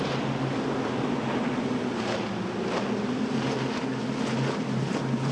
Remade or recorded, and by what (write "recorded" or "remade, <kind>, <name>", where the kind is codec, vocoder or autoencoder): recorded